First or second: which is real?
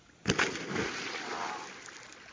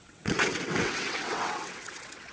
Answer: first